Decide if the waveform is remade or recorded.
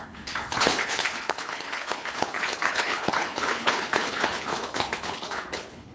remade